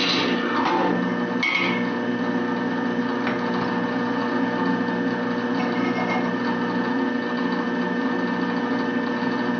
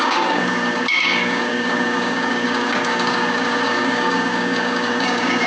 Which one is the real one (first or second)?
first